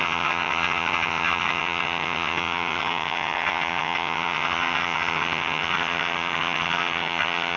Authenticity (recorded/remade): remade